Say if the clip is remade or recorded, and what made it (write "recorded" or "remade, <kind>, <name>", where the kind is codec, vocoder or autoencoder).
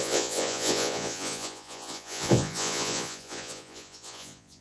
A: remade, vocoder, Vocos